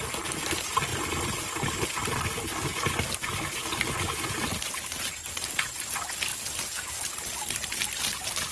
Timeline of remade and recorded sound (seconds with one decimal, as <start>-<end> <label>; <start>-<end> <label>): 0.0-8.5 recorded